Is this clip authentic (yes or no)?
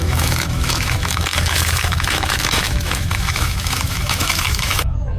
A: no